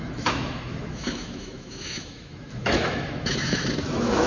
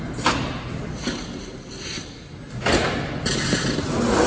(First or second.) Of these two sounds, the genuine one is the second